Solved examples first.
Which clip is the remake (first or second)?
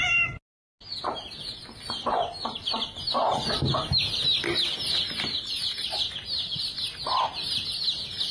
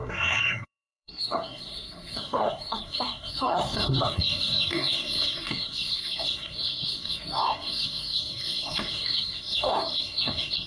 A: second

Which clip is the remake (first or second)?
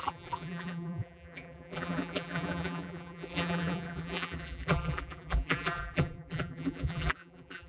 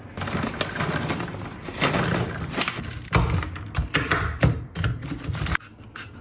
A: first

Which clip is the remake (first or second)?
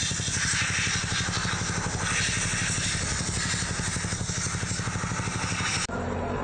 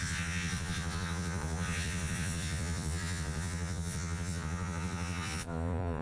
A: second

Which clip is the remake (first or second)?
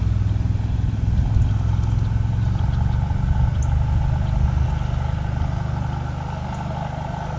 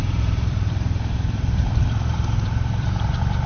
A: second